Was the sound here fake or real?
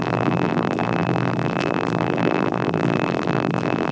fake